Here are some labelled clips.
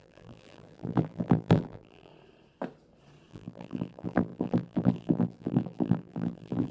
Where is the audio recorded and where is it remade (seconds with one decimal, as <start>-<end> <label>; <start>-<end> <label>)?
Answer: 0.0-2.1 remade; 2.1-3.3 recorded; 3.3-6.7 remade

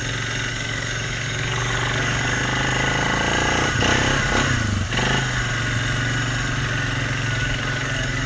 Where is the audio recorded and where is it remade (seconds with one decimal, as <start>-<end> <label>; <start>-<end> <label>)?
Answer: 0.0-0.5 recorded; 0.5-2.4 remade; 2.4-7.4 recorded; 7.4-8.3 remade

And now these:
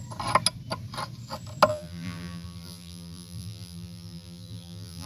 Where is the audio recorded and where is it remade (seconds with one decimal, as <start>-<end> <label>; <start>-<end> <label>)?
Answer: 0.0-1.7 recorded; 1.7-5.1 remade

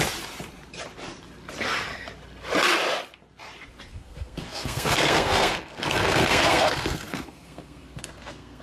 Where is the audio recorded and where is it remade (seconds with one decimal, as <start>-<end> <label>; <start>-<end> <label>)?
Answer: 0.0-3.9 recorded; 3.9-8.6 remade

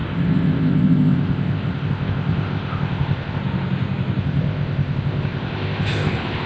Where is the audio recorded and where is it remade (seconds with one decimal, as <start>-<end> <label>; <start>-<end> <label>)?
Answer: 0.0-3.4 remade; 3.4-4.2 recorded; 4.2-6.5 remade